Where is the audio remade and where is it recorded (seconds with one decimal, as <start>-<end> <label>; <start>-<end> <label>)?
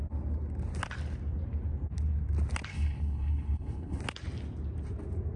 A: 0.0-2.7 recorded; 2.7-4.0 remade; 4.0-5.4 recorded